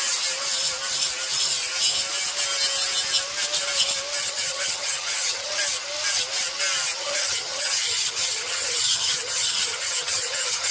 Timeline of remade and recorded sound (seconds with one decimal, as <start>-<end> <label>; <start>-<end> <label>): 0.0-4.2 recorded; 4.2-5.6 remade; 5.6-7.0 recorded; 7.0-10.7 remade